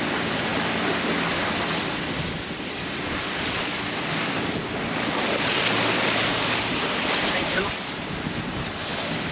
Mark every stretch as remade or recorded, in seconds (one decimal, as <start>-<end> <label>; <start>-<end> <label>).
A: 0.0-6.3 recorded; 6.3-8.7 remade; 8.7-9.3 recorded